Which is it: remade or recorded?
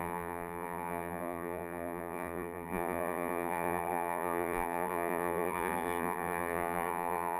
remade